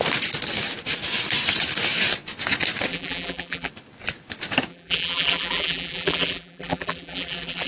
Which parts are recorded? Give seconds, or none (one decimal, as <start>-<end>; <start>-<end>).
0.0-2.9; 3.7-4.7